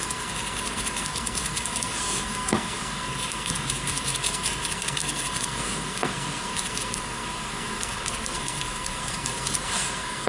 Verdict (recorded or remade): remade